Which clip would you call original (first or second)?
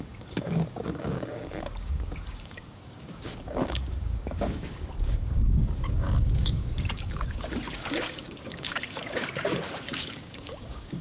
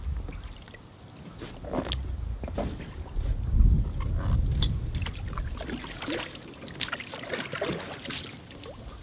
second